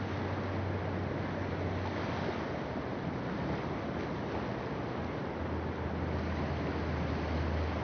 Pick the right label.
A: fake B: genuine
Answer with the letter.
B